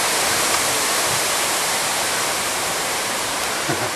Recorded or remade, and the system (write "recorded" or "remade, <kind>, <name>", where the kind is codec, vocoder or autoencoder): remade, vocoder, BigVGAN v2